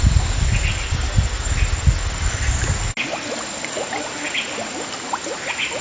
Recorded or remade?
recorded